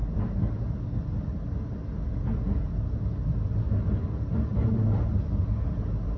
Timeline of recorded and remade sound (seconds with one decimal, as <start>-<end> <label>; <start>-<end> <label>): 0.0-6.2 recorded